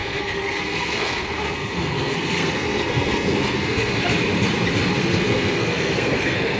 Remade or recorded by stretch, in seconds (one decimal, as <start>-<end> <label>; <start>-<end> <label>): 0.0-4.0 remade; 4.0-5.0 recorded; 5.0-6.6 remade